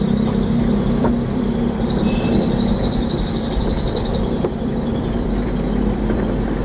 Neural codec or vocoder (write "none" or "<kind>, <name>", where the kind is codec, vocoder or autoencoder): vocoder, BigVGAN v2